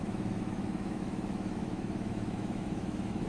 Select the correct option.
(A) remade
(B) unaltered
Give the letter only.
A